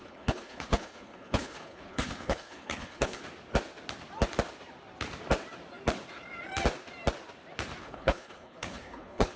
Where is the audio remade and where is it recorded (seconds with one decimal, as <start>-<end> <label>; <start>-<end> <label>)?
0.0-3.2 remade; 3.2-7.8 recorded; 7.8-9.4 remade